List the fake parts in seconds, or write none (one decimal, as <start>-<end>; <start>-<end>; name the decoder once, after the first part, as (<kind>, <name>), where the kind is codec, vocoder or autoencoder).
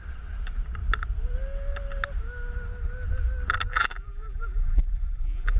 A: 3.7-5.6 (vocoder, BigVGAN v2)